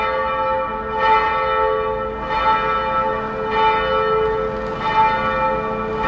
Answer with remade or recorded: recorded